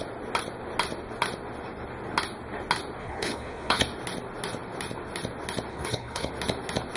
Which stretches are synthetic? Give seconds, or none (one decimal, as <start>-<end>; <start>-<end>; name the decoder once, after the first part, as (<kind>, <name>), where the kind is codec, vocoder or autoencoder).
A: 3.0-3.8 (codec, HILCodec); 5.7-6.3